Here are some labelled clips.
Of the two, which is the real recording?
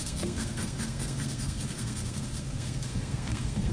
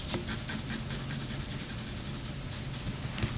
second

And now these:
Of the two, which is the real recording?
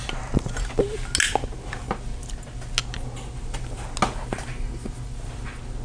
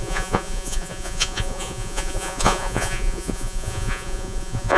first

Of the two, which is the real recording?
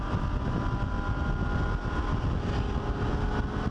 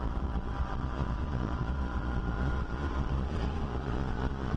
first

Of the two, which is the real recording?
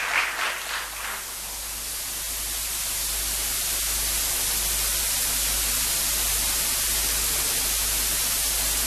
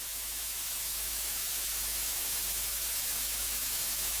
first